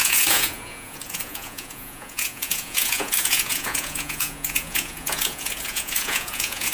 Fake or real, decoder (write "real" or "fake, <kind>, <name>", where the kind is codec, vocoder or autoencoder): fake, vocoder, Vocos